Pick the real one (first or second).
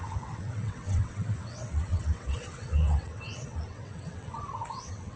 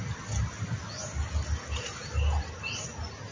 second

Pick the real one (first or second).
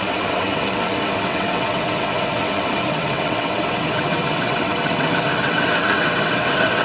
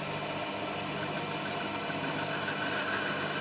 second